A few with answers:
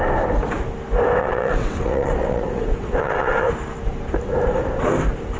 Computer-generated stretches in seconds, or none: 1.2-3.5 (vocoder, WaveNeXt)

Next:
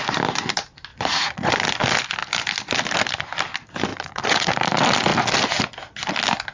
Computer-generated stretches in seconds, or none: 0.9-1.5 (vocoder, Vocos); 3.9-4.5